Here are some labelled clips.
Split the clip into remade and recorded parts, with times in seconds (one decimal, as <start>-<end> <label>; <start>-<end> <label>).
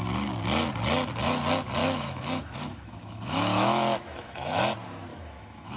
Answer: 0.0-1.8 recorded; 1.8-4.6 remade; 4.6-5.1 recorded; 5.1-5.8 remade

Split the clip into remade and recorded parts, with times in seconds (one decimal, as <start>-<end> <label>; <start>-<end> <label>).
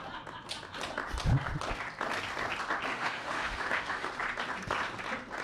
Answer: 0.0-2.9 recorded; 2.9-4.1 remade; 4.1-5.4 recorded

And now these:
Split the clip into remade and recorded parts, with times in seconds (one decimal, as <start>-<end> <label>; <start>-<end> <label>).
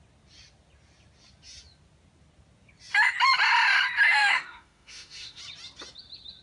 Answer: 0.0-4.2 recorded; 4.2-5.4 remade; 5.4-6.4 recorded